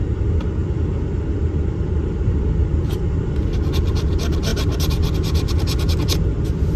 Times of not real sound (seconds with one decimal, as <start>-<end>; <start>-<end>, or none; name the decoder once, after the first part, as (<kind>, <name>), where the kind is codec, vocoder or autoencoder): 4.5-5.1 (vocoder, BigVGAN v2)